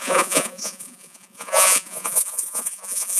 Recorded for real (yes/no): no